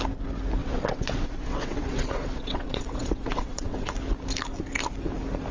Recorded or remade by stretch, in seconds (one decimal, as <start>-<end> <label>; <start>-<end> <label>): 0.0-0.6 recorded; 0.6-3.9 remade; 3.9-5.5 recorded